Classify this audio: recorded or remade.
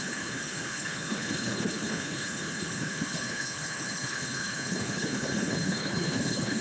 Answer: remade